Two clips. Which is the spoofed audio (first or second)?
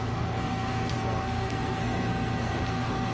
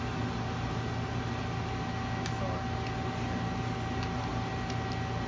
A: first